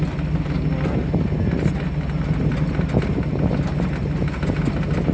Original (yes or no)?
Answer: yes